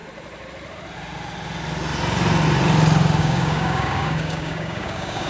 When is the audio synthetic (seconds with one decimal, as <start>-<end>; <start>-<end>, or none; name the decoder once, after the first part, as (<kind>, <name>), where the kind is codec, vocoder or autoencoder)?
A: 3.2-5.3 (codec, DAC)